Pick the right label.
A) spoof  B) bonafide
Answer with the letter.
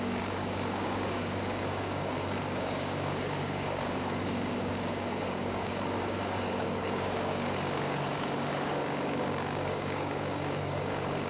A